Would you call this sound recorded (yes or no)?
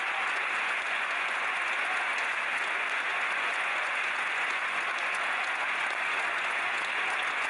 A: no